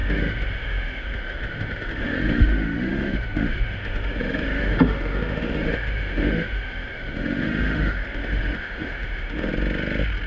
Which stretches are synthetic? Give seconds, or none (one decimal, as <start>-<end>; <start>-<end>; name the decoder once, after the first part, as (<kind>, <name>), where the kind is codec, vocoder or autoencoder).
0.0-9.5 (autoencoder, DAC-VAE)